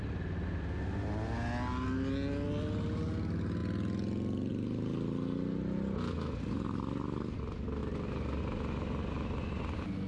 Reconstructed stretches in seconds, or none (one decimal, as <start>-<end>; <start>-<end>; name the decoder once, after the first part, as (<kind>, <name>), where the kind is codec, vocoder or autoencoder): 7.8-8.4 (vocoder, BigVGAN v2)